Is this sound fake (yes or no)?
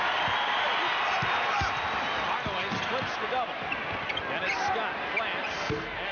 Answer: no